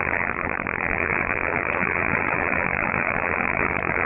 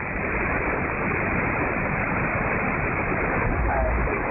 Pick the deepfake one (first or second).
first